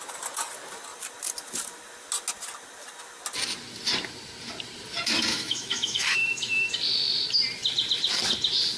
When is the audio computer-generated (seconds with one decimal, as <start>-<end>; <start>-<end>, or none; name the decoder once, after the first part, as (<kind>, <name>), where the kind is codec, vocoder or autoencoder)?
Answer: 5.3-6.7 (autoencoder, DAC-VAE)